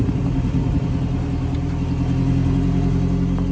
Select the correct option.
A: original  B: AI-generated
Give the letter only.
A